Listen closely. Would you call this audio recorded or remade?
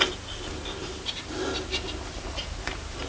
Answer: recorded